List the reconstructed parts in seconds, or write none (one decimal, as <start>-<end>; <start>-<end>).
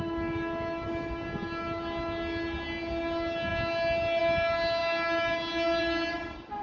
none